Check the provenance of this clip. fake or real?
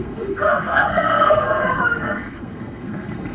fake